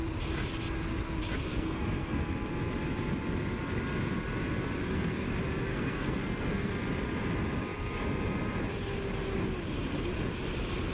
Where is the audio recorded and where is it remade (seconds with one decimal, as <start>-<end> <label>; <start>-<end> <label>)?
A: 0.0-1.5 recorded; 1.5-2.2 remade; 2.2-4.8 recorded; 4.8-5.3 remade; 5.3-5.7 recorded; 5.7-6.7 remade; 6.7-10.9 recorded